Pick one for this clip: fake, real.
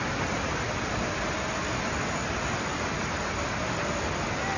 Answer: real